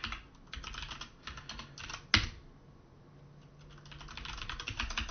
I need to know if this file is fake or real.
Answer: real